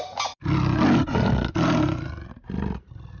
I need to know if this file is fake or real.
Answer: real